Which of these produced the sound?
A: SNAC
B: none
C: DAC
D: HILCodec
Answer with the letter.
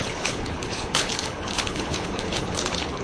D